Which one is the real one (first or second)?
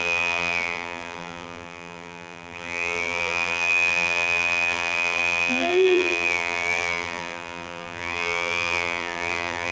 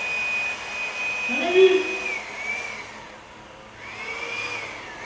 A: second